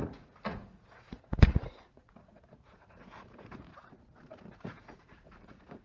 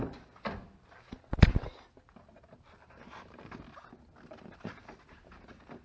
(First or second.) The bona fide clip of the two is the second